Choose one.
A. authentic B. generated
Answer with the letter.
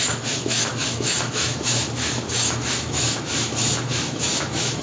B